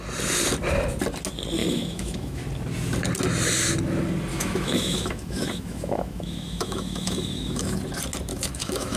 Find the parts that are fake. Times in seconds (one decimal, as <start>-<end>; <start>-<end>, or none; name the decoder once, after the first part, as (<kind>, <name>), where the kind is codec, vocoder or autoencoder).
1.6-2.4 (autoencoder, DAC-VAE); 4.3-7.8; 8.3-9.0